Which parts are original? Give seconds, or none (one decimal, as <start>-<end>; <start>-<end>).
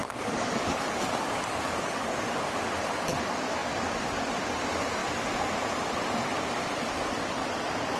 2.4-8.0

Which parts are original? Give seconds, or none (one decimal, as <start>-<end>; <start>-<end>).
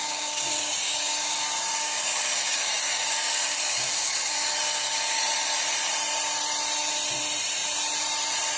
5.2-8.6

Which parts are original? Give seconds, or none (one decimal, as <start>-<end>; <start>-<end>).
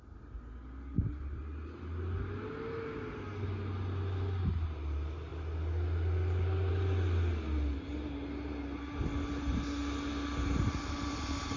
0.0-11.6